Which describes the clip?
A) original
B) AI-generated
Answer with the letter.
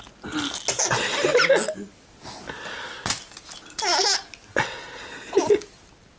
A